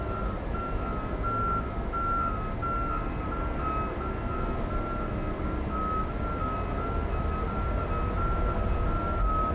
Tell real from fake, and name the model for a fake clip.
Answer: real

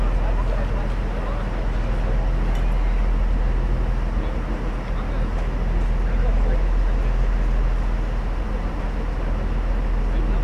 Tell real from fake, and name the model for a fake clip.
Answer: real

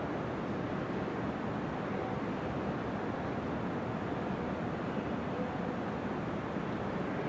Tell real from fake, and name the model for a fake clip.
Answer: real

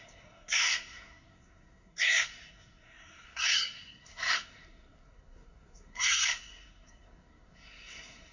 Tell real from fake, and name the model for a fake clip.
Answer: fake, codec, SNAC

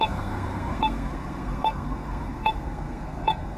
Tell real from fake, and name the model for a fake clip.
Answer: fake, codec, SNAC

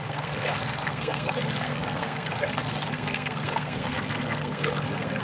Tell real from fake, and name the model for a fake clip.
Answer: fake, codec, SNAC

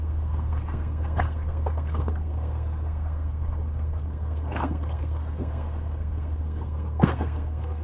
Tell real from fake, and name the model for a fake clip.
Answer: fake, codec, SNAC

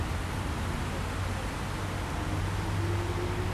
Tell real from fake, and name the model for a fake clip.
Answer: real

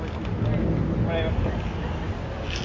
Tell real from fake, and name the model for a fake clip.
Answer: real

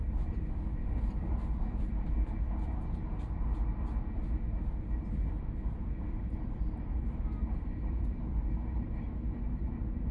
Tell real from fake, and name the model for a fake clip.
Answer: real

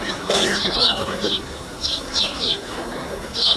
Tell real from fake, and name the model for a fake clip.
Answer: fake, codec, SNAC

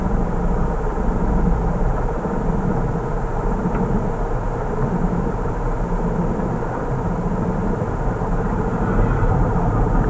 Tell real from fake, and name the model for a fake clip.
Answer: real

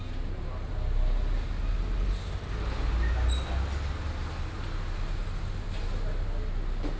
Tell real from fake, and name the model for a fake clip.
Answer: real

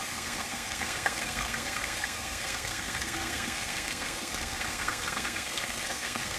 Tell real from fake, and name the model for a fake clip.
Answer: fake, codec, SNAC